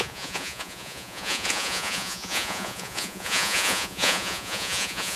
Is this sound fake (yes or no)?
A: yes